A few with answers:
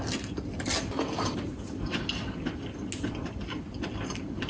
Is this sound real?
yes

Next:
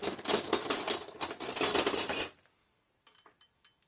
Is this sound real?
yes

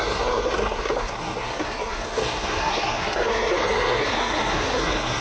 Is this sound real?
no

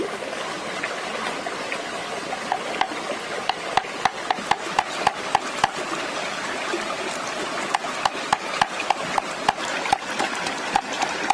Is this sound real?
yes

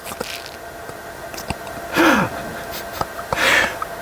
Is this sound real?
yes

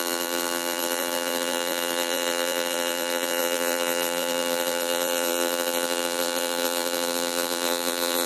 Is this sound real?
no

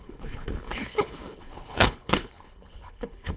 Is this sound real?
no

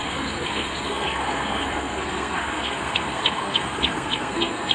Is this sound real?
no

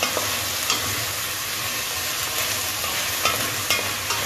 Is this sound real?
yes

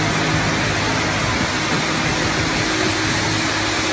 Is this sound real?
yes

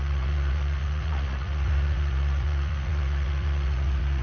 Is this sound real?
no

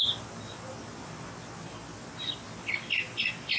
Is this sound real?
yes